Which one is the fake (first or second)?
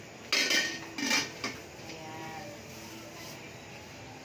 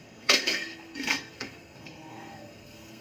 second